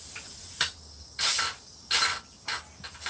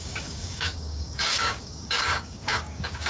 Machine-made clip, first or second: second